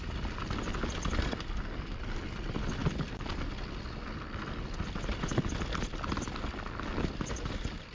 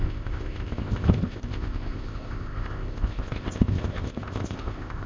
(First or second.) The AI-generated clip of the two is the second